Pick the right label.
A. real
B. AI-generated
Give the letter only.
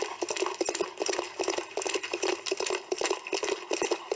B